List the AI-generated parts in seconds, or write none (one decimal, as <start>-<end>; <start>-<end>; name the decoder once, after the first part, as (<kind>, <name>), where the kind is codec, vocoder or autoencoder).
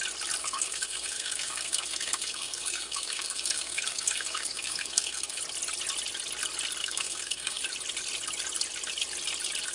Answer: 0.4-5.4 (codec, SNAC); 6.8-7.6